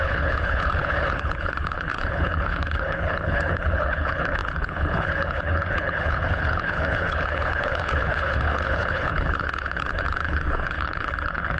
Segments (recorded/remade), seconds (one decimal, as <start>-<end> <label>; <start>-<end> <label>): 0.0-11.6 remade